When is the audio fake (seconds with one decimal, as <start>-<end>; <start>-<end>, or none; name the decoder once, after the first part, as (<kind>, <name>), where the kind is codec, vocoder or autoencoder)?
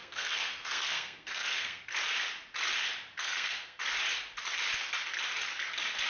0.0-1.8 (codec, SNAC); 3.2-3.8